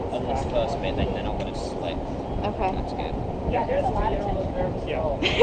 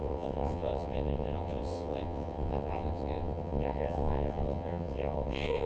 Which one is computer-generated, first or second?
second